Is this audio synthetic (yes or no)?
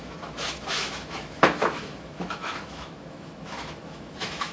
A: yes